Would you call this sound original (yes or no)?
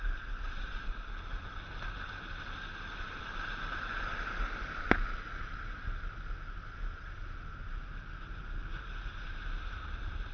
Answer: yes